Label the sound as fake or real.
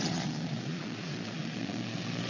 fake